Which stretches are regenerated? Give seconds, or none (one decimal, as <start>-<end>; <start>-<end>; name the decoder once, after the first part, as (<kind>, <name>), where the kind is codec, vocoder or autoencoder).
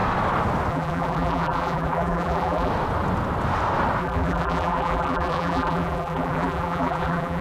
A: 0.7-2.7 (vocoder, BigVGAN v2); 4.0-7.4